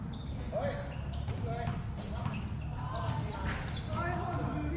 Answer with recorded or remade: recorded